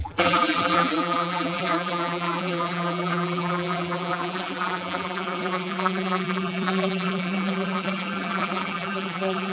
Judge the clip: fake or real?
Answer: fake